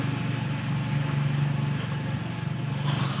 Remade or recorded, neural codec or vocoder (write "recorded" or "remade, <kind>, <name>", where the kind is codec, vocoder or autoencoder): recorded